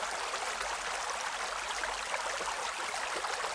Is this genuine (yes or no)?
yes